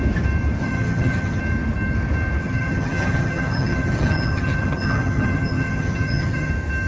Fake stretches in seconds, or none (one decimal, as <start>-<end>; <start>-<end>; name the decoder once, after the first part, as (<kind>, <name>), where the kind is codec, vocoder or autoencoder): 0.6-1.4 (vocoder, HiFi-GAN); 2.4-6.5